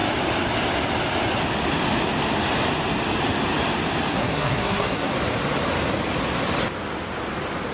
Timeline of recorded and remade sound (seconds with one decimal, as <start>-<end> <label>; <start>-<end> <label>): 0.0-4.1 recorded; 4.1-5.1 remade; 5.1-7.7 recorded